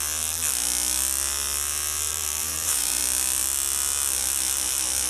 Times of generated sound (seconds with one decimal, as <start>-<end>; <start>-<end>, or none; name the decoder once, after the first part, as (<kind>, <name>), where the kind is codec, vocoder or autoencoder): 2.1-3.0 (vocoder, BigVGAN v2)

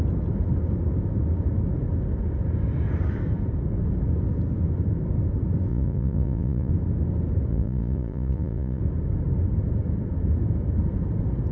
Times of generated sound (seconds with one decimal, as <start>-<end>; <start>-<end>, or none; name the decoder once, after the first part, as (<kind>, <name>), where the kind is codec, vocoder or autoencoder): 5.7-6.7 (vocoder, Vocos); 7.5-8.8

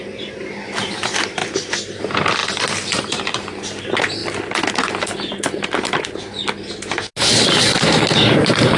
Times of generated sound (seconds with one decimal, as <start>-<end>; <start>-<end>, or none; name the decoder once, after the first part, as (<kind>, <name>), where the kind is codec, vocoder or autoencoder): 0.0-1.4 (vocoder, BigVGAN v2); 2.0-4.2

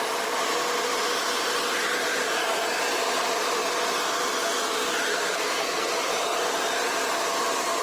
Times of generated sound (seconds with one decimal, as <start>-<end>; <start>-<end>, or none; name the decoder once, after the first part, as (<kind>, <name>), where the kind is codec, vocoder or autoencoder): 5.1-5.9 (codec, SNAC)

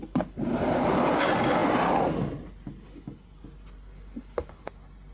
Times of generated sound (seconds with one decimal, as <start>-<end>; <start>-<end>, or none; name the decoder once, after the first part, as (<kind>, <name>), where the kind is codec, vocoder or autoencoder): none

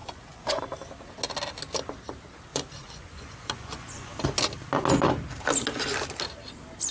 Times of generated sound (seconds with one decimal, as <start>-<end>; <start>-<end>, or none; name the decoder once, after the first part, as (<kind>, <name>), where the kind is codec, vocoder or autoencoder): 0.0-0.6 (vocoder, Vocos); 2.5-4.1

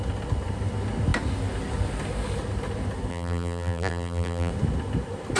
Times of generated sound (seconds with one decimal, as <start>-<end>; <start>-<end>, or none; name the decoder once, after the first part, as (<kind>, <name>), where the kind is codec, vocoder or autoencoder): 3.1-4.5 (vocoder, BigVGAN v2)

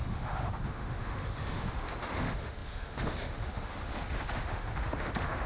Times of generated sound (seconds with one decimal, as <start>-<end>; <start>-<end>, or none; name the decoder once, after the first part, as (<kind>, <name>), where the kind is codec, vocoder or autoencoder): 0.0-5.5 (autoencoder, DAC-VAE)